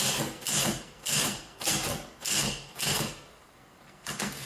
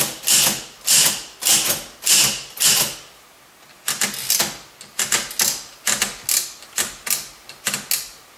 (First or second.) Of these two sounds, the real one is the second